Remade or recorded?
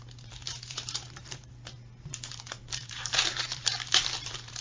remade